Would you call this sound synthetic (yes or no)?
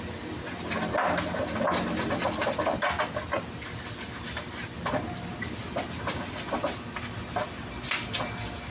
no